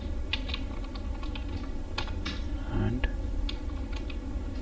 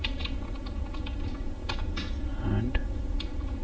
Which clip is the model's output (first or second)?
second